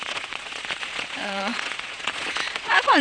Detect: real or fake fake